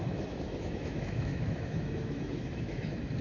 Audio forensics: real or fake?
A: fake